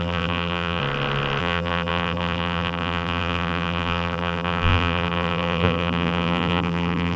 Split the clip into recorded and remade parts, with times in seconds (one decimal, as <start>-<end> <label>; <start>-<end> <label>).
0.0-0.8 remade; 0.8-1.4 recorded; 1.4-7.2 remade